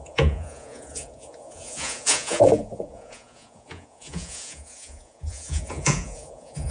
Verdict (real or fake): fake